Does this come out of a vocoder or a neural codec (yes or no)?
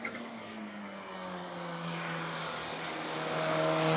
yes